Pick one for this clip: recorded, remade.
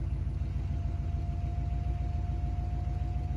recorded